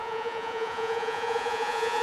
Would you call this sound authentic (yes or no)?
no